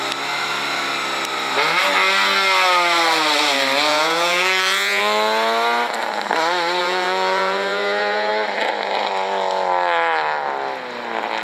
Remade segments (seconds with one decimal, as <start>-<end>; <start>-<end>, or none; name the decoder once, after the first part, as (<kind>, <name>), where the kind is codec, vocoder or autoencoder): 3.9-5.0 (vocoder, Vocos); 6.8-8.3